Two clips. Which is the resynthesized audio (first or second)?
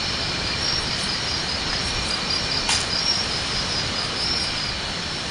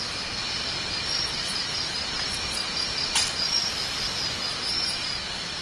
first